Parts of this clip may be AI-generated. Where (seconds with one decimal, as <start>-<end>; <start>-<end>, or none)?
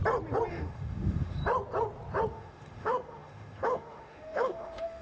0.5-1.4; 2.3-5.0